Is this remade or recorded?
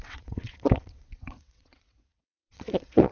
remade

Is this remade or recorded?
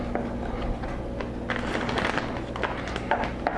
recorded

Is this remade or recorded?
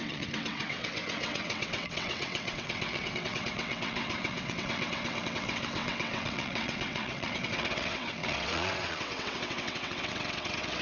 remade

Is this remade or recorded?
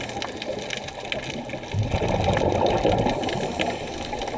recorded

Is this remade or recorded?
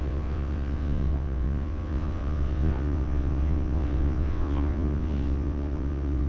remade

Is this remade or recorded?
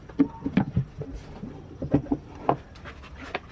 recorded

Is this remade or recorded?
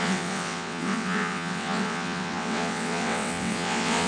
remade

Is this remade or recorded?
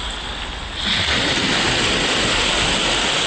recorded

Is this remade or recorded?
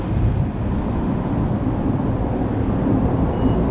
recorded